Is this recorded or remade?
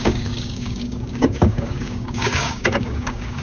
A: remade